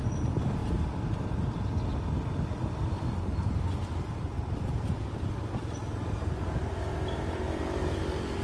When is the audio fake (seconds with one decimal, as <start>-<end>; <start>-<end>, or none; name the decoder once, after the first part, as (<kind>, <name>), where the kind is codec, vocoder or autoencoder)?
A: 0.0-0.6 (vocoder, BigVGAN v2); 2.3-8.4